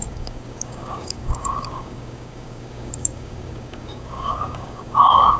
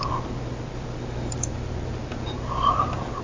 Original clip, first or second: second